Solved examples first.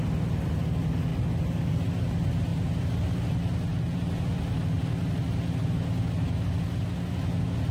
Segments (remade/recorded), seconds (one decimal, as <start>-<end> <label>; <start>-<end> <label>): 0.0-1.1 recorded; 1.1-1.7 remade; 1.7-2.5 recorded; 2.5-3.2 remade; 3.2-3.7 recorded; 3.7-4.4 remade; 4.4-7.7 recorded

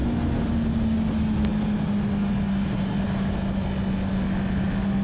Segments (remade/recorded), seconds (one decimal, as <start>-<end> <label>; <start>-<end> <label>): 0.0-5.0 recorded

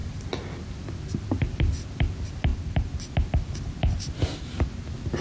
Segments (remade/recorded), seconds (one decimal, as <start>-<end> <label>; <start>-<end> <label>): 0.0-0.5 remade; 0.5-2.5 recorded; 2.5-3.1 remade; 3.1-5.2 recorded